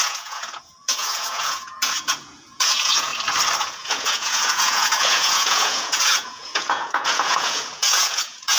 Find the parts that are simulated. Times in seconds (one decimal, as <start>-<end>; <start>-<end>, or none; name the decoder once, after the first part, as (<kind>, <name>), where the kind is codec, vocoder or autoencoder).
0.0-3.1 (vocoder, Vocos); 3.6-8.6